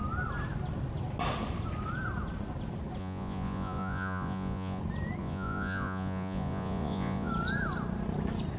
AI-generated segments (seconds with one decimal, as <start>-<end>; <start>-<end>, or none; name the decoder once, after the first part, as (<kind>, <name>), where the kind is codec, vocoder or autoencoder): 3.0-4.8 (vocoder, Vocos); 5.2-7.3